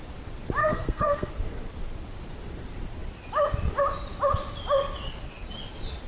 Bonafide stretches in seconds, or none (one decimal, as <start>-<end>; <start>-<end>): 0.0-0.6; 1.3-6.1